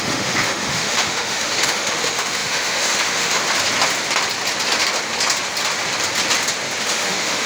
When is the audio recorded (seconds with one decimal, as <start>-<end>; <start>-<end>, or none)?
3.4-6.8